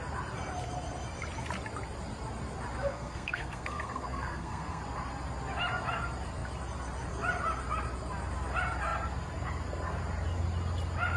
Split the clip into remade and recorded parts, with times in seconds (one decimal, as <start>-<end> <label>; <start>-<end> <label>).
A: 0.0-2.8 recorded; 2.8-4.8 remade; 4.8-11.2 recorded